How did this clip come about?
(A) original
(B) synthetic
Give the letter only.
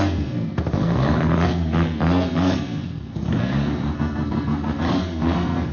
B